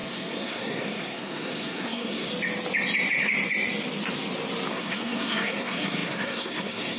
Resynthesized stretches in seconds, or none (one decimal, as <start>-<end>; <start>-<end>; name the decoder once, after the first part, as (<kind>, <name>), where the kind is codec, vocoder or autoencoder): 0.0-2.3 (codec, SNAC); 4.7-7.0